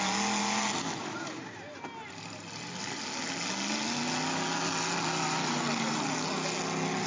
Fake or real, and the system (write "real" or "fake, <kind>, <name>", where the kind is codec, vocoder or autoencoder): real